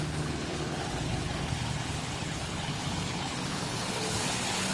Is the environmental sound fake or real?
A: fake